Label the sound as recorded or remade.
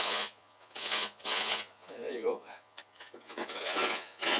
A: remade